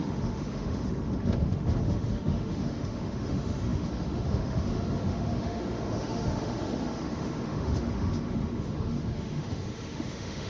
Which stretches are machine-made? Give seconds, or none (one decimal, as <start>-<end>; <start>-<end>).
0.0-10.5